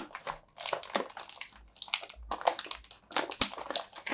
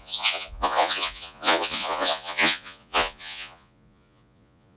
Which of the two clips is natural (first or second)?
first